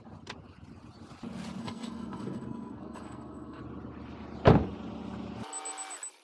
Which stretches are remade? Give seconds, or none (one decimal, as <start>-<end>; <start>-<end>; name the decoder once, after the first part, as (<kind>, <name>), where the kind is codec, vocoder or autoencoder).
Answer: 1.6-3.6 (codec, SNAC)